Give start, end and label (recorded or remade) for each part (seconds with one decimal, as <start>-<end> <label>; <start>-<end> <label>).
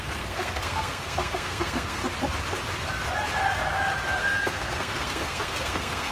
0.0-2.0 remade; 2.0-4.2 recorded; 4.2-6.1 remade